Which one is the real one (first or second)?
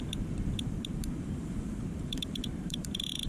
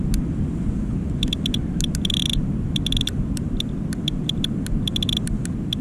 second